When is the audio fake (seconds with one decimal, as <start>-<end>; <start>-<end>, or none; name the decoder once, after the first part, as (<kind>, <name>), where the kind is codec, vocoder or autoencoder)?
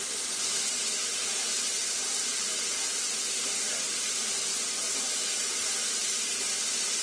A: 2.3-3.1 (vocoder, BigVGAN v2); 4.8-5.5